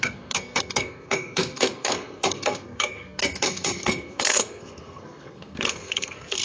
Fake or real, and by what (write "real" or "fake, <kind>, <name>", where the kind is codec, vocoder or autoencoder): fake, codec, SNAC